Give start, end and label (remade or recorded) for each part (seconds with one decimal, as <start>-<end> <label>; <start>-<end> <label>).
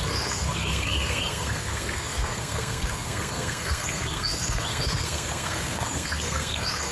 0.0-6.9 remade